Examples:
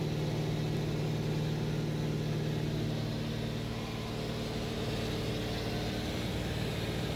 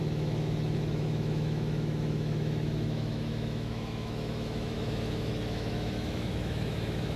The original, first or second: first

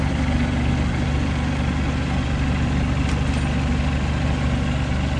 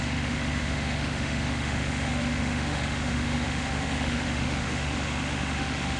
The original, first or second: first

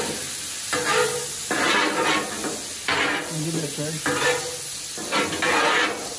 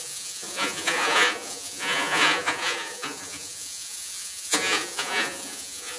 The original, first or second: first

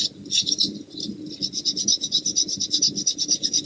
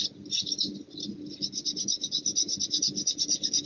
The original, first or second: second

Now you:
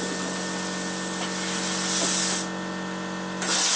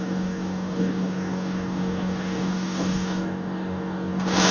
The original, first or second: first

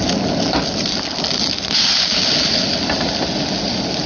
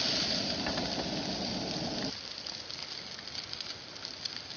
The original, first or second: first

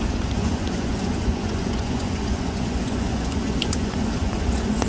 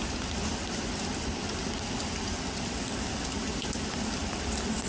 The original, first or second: second